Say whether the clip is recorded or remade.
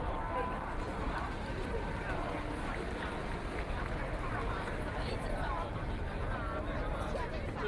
recorded